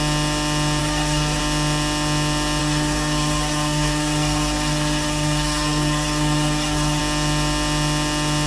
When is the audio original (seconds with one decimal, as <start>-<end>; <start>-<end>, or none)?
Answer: 0.0-0.8; 1.4-2.6; 7.0-8.5